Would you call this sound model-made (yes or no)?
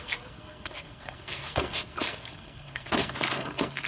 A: yes